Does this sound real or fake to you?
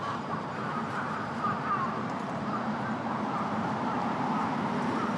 fake